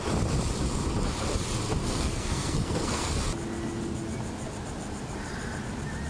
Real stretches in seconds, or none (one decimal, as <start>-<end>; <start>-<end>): 0.0-1.8; 3.2-6.1